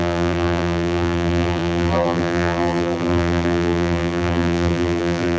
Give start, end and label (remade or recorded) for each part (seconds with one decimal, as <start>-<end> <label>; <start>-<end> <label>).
0.0-5.4 remade